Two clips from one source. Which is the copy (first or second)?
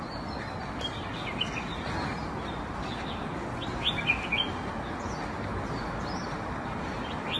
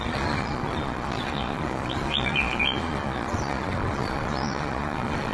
second